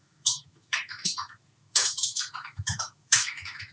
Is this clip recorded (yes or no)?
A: no